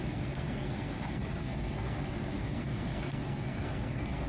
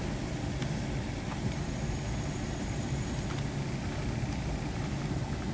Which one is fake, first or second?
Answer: first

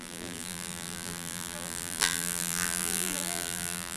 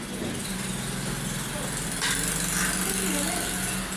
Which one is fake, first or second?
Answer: first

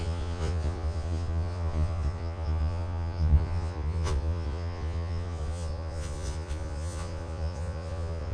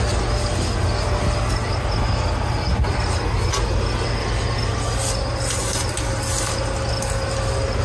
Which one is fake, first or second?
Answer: first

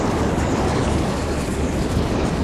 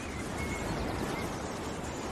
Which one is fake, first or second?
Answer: first